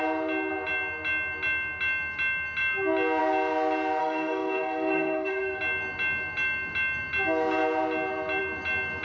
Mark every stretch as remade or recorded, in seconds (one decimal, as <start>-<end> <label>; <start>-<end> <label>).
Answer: 0.0-4.0 recorded; 4.0-5.6 remade; 5.6-9.0 recorded